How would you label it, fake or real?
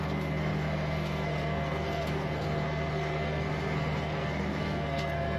fake